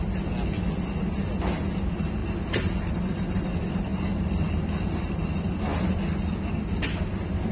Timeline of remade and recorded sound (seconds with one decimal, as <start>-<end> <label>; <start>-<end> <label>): 0.0-7.5 recorded